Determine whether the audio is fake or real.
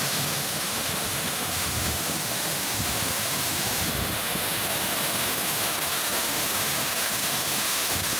fake